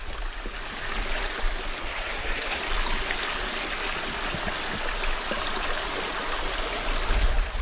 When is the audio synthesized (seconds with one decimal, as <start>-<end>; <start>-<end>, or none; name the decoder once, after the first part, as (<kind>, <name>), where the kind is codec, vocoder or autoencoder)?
1.8-2.6 (codec, SNAC)